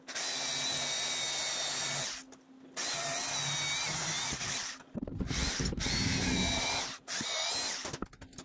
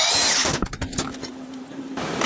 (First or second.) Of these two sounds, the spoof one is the second